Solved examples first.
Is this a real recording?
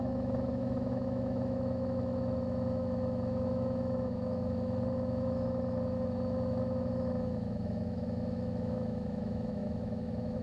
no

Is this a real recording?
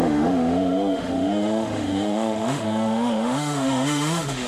no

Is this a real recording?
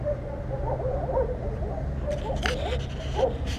yes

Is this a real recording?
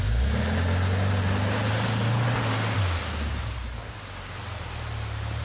yes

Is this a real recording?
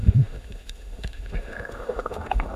no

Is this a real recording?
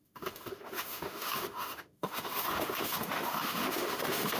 no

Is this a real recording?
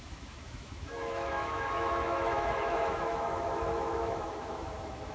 no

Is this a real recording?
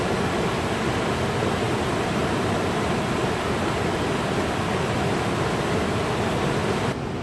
yes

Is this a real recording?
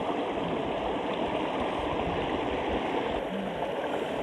yes